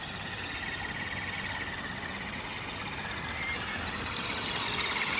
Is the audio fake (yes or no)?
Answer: no